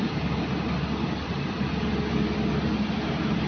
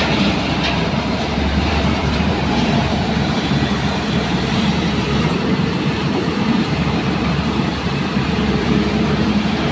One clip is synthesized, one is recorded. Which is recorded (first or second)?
first